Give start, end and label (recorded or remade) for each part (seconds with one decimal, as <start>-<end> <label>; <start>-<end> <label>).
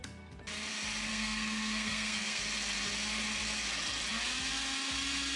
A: 0.0-1.1 recorded; 1.1-2.4 remade; 2.4-5.4 recorded